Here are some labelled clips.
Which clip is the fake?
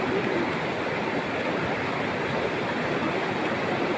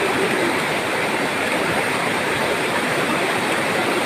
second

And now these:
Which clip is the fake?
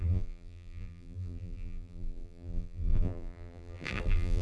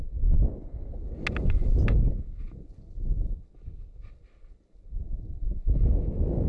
first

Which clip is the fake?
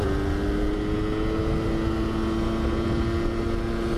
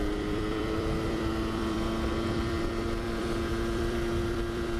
second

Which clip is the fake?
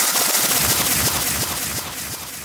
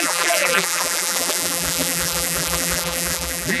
second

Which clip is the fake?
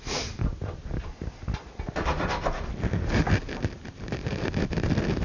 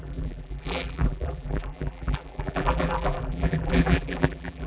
second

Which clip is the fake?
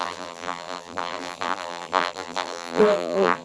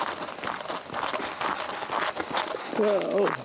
first